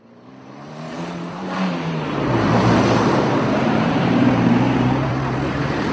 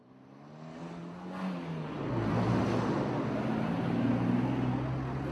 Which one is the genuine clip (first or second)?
second